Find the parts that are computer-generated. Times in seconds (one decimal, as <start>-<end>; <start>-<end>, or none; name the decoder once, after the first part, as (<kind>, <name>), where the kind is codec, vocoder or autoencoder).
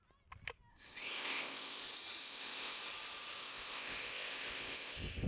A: 0.7-1.8 (codec, ZipCodec); 2.2-2.8; 3.4-5.3